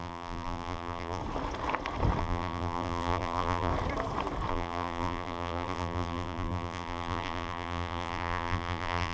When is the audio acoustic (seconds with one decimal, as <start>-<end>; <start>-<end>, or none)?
1.2-2.2; 3.7-4.5